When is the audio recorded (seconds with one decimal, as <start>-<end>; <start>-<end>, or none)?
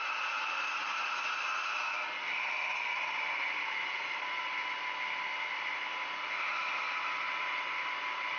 0.0-8.4